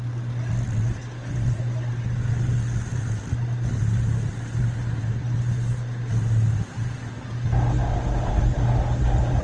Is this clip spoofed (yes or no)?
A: no